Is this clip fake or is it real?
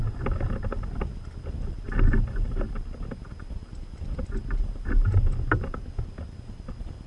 real